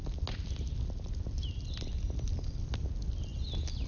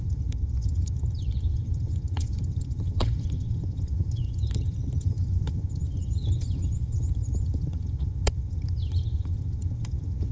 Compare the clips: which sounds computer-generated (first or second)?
second